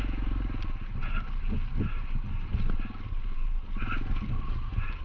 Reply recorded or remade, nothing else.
recorded